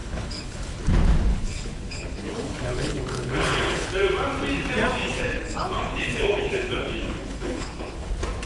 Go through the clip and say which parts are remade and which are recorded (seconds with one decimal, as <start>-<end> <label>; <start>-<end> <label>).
0.0-0.8 remade; 0.8-1.3 recorded; 1.3-3.9 remade; 3.9-5.0 recorded; 5.0-8.1 remade; 8.1-8.5 recorded